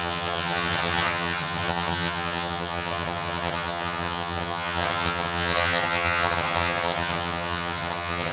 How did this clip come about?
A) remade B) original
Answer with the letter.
A